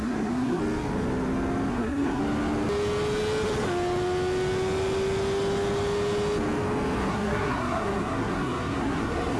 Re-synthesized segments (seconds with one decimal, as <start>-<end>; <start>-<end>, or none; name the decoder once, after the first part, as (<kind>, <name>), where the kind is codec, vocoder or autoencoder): 0.0-0.6 (codec, SNAC); 1.7-2.2; 7.1-9.4